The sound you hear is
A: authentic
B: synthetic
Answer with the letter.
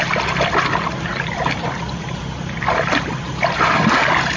A